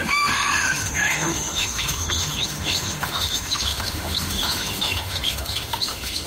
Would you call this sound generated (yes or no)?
yes